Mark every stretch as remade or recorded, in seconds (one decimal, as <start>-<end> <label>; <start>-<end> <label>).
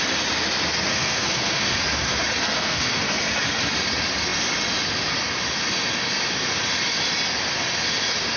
0.0-0.9 recorded; 0.9-1.8 remade; 1.8-2.4 recorded; 2.4-3.0 remade; 3.0-8.4 recorded